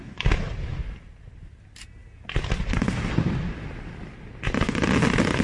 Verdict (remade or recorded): recorded